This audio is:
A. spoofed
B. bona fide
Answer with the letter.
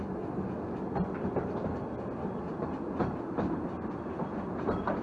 B